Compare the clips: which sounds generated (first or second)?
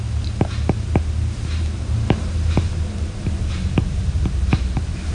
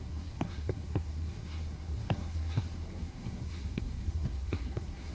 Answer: second